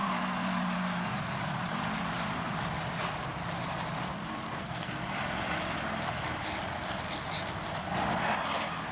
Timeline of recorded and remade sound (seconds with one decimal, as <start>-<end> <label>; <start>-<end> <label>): 0.0-4.6 recorded; 4.6-5.0 remade; 5.0-8.9 recorded